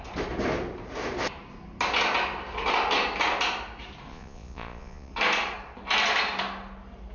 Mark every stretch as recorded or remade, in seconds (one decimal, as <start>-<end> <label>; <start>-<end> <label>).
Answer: 0.0-4.1 recorded; 4.1-5.1 remade; 5.1-7.1 recorded